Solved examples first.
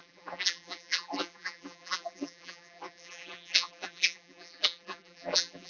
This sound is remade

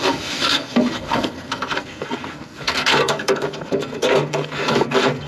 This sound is remade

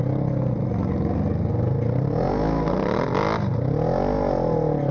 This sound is recorded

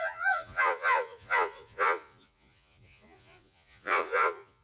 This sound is remade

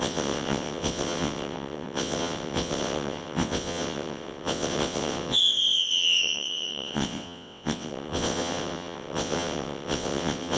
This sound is remade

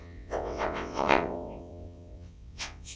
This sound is remade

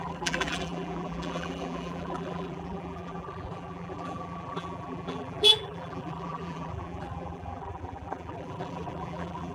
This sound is remade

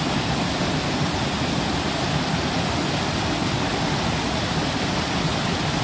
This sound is recorded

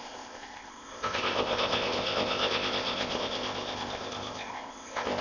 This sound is remade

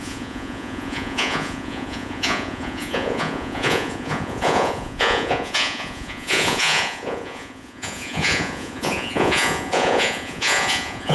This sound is remade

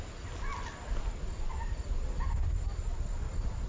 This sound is recorded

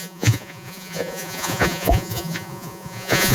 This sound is remade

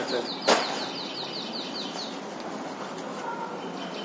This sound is recorded